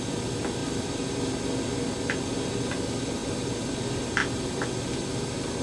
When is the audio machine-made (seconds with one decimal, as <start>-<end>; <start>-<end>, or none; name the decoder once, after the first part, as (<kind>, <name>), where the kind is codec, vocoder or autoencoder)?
none